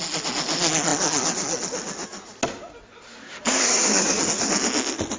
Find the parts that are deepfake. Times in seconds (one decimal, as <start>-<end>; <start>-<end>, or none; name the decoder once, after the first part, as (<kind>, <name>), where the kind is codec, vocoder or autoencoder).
3.1-4.2 (codec, DAC)